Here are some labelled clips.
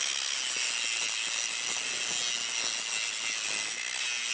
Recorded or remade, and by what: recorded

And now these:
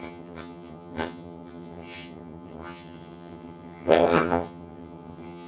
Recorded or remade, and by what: remade, vocoder, HiFi-GAN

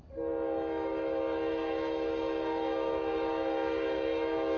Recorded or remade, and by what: recorded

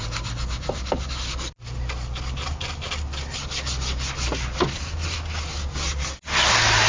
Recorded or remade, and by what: recorded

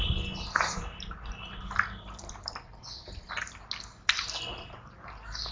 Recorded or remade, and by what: recorded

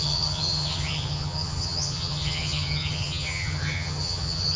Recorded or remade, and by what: remade, vocoder, HiFi-GAN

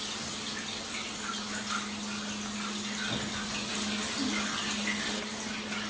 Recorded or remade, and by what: recorded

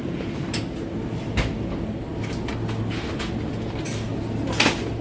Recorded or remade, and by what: recorded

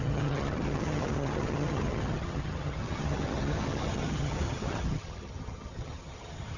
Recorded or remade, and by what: remade, vocoder, HiFi-GAN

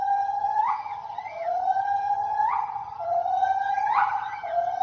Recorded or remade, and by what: remade, vocoder, HiFi-GAN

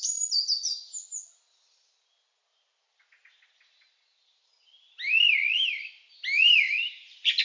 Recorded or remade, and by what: recorded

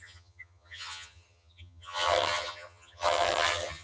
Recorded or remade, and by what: remade, vocoder, HiFi-GAN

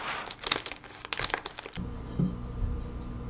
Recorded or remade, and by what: recorded